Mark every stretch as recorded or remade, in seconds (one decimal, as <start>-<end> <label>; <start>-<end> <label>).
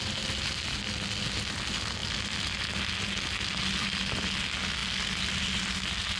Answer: 0.0-6.2 recorded